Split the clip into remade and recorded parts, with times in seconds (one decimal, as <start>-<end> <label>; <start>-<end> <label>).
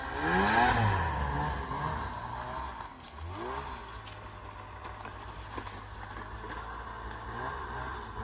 0.0-8.2 recorded